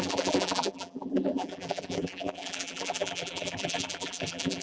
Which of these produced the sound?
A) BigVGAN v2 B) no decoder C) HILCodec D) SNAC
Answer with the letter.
A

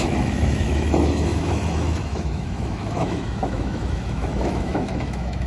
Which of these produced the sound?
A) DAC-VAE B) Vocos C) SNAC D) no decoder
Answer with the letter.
A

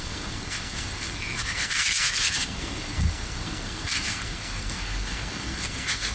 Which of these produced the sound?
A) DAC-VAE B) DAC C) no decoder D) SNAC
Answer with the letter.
D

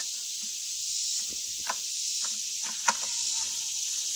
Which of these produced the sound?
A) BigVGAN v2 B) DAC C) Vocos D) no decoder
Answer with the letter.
D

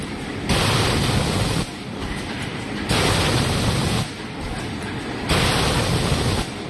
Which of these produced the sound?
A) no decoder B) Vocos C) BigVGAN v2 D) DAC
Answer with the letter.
A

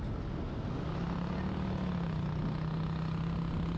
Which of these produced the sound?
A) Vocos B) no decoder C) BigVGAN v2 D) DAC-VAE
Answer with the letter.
B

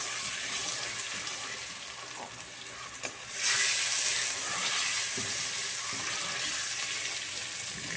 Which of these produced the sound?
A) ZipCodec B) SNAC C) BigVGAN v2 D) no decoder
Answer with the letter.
D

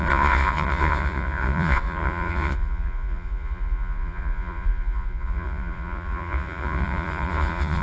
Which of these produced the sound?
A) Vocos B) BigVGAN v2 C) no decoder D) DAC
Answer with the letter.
A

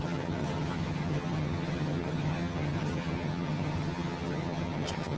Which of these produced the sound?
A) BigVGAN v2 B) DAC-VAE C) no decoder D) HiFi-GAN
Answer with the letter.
D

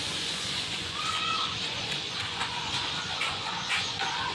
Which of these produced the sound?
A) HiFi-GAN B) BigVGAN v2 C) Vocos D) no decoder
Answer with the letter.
C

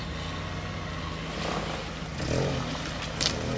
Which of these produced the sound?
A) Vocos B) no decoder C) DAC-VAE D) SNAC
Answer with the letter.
B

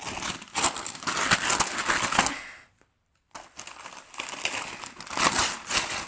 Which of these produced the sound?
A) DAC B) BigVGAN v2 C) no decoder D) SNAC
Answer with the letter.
C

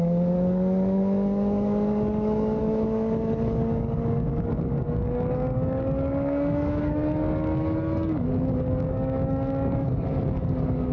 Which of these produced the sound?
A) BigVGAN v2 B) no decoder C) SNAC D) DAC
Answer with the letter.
D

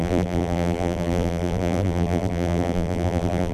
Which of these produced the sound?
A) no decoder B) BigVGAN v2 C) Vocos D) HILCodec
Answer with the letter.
B